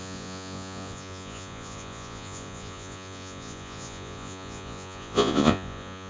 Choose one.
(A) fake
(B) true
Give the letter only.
A